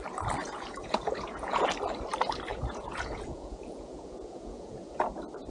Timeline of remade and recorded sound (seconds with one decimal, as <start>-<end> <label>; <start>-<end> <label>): 0.0-0.4 recorded; 0.4-1.6 remade; 1.6-2.5 recorded; 2.5-5.0 remade; 5.0-5.5 recorded